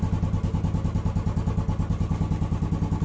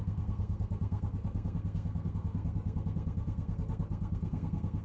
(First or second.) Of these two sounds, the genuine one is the first